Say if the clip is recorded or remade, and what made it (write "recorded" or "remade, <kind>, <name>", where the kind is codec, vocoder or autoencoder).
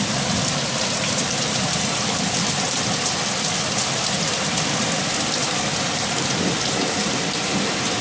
remade, vocoder, BigVGAN v2